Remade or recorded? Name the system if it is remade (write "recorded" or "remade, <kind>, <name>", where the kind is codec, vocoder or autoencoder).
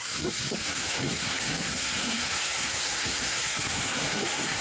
remade, codec, SNAC